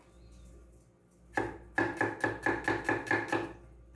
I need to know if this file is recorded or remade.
recorded